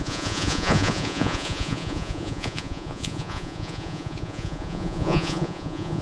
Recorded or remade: remade